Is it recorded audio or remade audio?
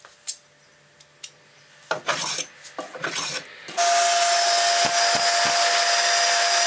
recorded